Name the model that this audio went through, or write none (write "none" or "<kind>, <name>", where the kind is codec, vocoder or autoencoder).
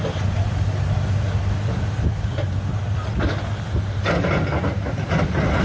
none